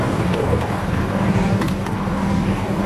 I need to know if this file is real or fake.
fake